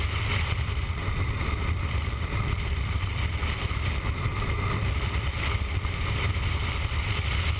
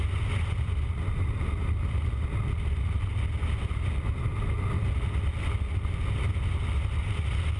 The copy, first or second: first